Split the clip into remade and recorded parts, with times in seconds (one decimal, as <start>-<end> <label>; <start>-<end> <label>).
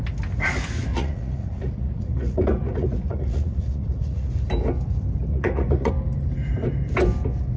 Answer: 0.0-0.9 recorded; 0.9-4.3 remade; 4.3-5.3 recorded; 5.3-5.9 remade; 5.9-7.6 recorded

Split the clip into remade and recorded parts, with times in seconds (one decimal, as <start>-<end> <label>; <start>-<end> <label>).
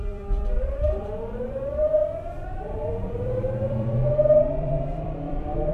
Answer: 0.0-5.7 remade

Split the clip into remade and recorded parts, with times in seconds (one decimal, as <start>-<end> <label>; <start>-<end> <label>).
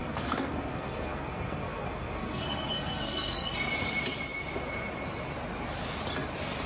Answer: 0.0-3.7 remade; 3.7-6.7 recorded